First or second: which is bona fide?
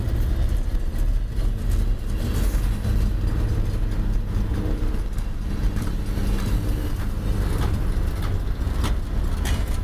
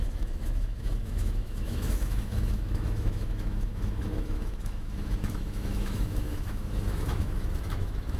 first